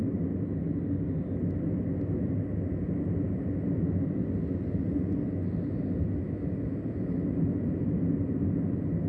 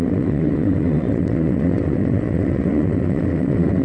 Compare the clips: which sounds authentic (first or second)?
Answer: first